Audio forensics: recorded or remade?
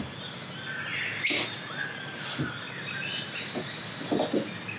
recorded